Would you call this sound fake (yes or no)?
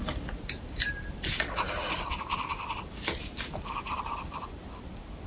yes